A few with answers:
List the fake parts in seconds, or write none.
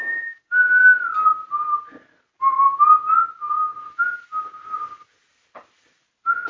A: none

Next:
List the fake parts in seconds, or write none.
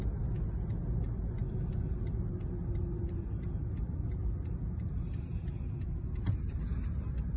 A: none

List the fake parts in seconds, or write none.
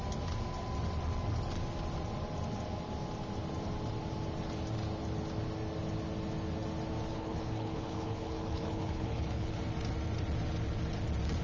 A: 7.1-9.6 (codec, HILCodec)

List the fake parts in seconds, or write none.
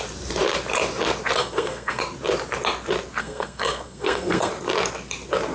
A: 1.4-2.0 (codec, SNAC); 3.2-4.5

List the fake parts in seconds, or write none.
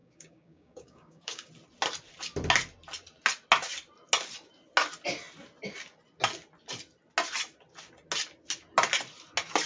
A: 0.0-1.5 (codec, DAC)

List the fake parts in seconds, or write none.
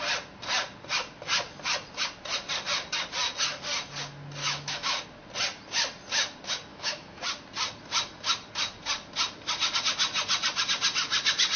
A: 4.4-5.0 (autoencoder, DAC-VAE); 6.7-7.2